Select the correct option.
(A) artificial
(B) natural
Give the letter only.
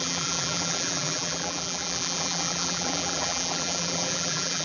A